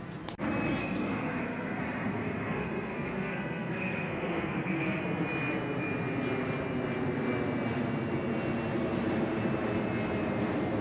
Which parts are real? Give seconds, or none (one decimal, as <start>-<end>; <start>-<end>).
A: 0.0-0.8; 5.0-10.8